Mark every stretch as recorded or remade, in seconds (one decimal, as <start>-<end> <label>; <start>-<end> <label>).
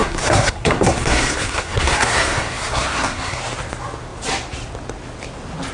0.0-3.4 remade; 3.4-5.7 recorded